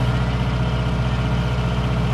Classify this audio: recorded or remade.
recorded